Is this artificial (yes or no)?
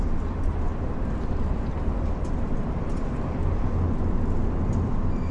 no